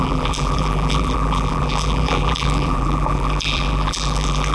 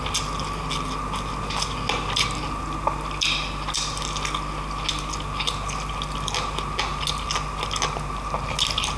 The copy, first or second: first